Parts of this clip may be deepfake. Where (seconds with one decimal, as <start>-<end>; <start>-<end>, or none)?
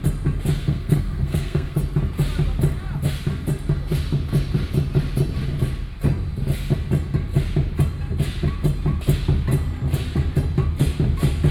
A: 0.6-1.8